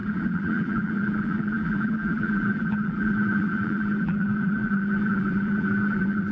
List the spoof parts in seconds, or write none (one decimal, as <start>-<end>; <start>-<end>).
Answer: 0.0-6.3